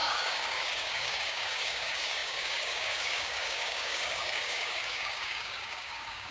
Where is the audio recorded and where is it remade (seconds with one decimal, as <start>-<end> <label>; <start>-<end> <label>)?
0.0-6.3 remade